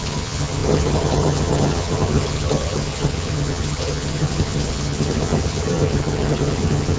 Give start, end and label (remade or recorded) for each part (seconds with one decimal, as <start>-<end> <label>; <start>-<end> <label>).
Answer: 0.0-7.0 remade